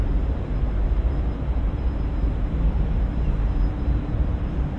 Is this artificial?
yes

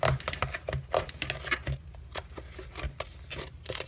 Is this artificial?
no